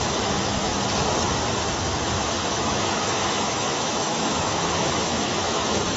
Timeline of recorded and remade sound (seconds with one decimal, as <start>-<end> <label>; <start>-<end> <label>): 0.0-0.7 remade; 0.7-1.7 recorded; 1.7-6.0 remade